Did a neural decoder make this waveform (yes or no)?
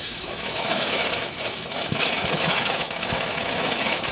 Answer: yes